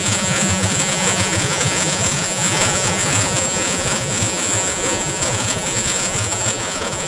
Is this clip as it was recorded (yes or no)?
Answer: no